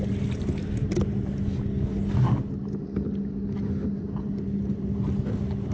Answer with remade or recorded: recorded